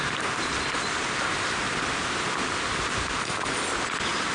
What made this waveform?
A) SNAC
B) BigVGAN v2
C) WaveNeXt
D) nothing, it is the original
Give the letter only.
D